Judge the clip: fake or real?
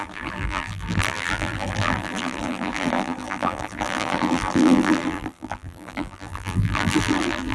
fake